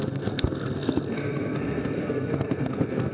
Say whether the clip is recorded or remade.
remade